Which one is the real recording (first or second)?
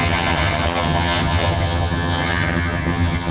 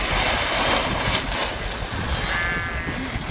second